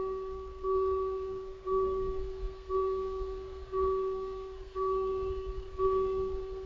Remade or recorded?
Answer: remade